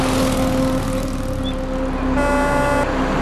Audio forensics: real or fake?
real